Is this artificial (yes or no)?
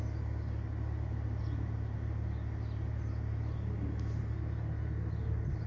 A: no